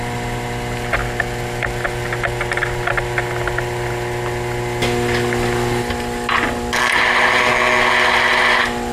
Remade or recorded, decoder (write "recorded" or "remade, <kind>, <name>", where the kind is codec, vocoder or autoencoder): recorded